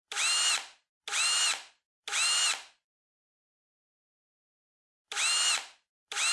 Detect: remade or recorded recorded